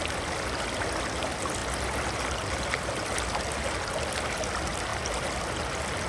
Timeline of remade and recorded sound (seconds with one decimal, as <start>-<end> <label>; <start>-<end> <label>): 0.0-6.1 recorded